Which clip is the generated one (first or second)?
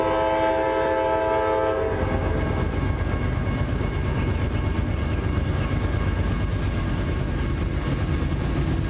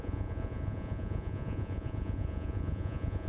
second